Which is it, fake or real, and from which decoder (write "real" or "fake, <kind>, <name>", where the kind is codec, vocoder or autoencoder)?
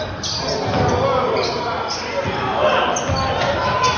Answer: real